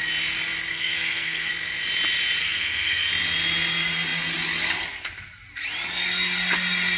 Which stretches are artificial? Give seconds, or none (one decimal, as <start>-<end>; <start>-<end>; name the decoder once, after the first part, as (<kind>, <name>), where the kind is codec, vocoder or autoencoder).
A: 0.7-1.5 (codec, SNAC); 2.4-3.1